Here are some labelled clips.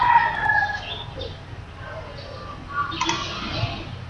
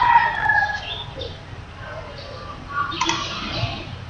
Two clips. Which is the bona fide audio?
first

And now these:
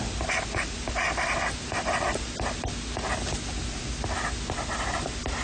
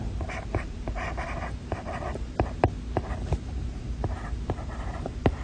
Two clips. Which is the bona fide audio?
first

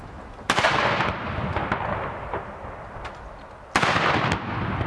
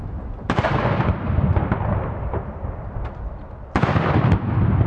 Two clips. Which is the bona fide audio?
first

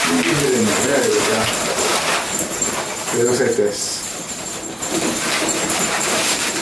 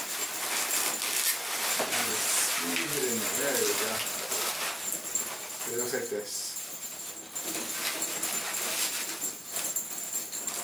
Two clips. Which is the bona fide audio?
second